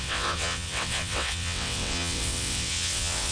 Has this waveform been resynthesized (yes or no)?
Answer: yes